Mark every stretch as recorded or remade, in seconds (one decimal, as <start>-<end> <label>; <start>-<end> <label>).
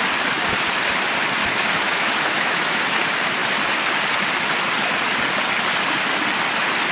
0.0-1.4 recorded; 1.4-2.8 remade; 2.8-6.9 recorded